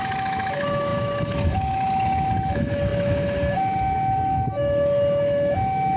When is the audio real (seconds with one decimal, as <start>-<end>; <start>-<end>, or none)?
none